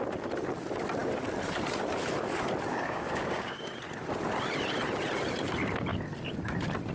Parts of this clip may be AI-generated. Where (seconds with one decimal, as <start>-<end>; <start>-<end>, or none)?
2.7-3.7